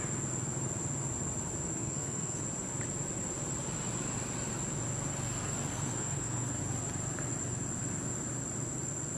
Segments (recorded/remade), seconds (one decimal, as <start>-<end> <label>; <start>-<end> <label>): 0.0-1.7 recorded; 1.7-2.4 remade; 2.4-5.7 recorded; 5.7-6.6 remade; 6.6-9.2 recorded